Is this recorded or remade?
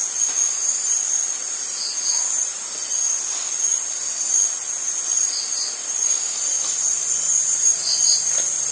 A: recorded